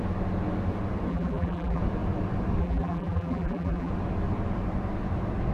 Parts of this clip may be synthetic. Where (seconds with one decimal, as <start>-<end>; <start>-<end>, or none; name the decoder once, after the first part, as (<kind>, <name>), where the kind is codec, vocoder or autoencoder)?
1.1-1.8 (vocoder, BigVGAN v2); 2.6-3.9